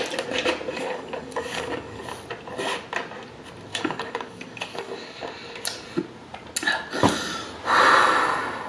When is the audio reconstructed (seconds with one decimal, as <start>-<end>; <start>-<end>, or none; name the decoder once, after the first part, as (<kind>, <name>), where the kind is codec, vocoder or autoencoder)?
0.7-2.0 (codec, DAC); 3.7-5.2